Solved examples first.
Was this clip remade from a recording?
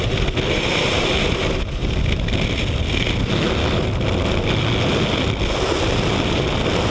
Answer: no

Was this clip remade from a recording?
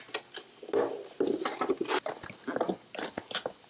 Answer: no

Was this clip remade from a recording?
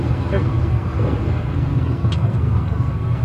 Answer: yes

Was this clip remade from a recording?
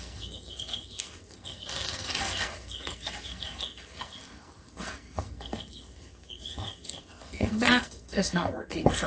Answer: yes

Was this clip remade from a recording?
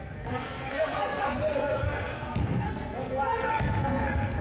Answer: yes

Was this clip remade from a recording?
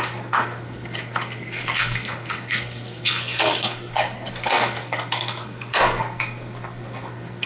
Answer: yes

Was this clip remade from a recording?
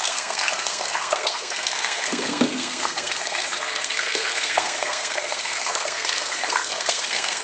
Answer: yes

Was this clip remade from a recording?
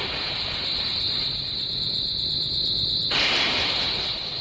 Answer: no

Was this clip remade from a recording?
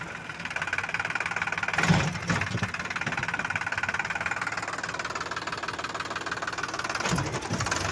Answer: no